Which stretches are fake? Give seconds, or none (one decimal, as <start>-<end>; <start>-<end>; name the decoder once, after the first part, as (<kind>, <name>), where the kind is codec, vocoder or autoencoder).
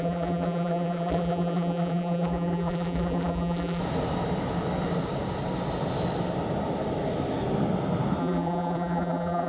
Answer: 0.0-3.8 (vocoder, BigVGAN v2); 8.2-9.5